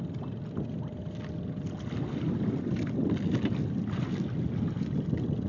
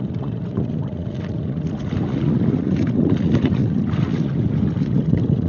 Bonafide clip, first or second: first